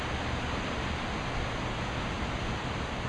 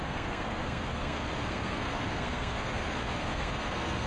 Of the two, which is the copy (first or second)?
second